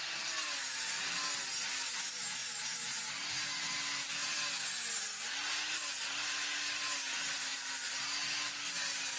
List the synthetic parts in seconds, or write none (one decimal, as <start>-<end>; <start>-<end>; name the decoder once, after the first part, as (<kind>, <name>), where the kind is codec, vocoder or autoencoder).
none

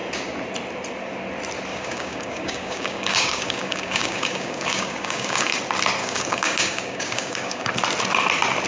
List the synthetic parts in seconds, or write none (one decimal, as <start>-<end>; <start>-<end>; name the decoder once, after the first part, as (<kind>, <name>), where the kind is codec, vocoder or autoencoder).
1.7-5.6 (codec, DAC); 6.0-7.7

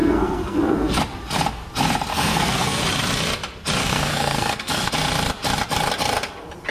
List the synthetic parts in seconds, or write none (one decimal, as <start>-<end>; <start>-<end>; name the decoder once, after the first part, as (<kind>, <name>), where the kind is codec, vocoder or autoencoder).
0.0-1.0 (codec, SNAC); 2.1-2.8; 3.8-4.9

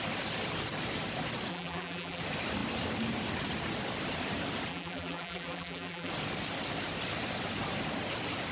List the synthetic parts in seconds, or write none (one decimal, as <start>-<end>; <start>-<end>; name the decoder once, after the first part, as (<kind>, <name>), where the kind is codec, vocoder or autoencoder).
1.5-2.2 (vocoder, BigVGAN v2); 4.7-6.1

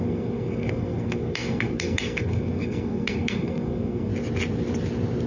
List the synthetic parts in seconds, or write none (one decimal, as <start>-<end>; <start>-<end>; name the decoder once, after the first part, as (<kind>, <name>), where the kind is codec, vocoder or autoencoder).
0.0-4.1 (codec, SNAC)

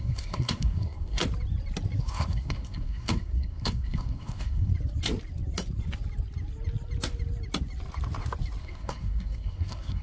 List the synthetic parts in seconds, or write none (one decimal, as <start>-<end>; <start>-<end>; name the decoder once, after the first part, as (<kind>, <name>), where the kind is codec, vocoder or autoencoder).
0.0-1.2 (codec, SNAC); 2.0-4.7; 8.6-10.0

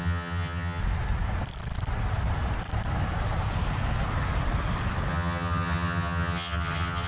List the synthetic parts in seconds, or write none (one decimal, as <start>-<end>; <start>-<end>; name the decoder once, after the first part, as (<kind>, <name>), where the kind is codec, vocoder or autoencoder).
0.0-0.8 (vocoder, HiFi-GAN); 5.1-7.1